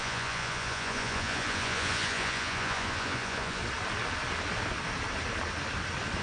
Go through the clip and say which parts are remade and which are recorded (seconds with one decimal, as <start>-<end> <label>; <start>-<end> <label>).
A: 0.0-3.6 remade; 3.6-6.2 recorded